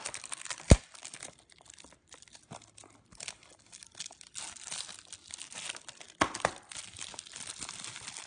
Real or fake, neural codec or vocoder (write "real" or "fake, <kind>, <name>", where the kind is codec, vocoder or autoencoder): real